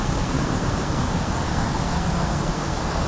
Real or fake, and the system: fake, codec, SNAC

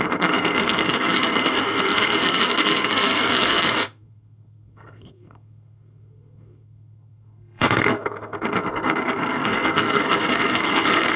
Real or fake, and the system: fake, codec, SNAC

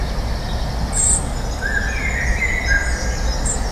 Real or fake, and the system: real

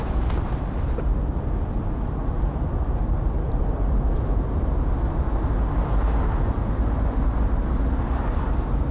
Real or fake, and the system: real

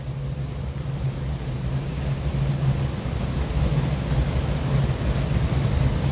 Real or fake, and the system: real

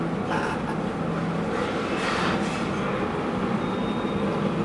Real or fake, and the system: real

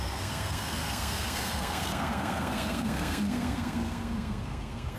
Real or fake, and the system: fake, codec, SNAC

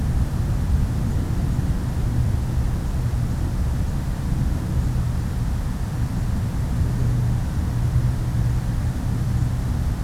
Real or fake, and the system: real